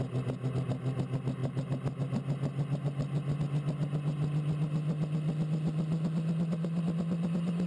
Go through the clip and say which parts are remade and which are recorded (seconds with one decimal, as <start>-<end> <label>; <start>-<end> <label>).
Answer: 0.0-7.7 recorded